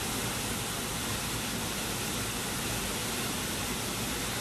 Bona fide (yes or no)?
yes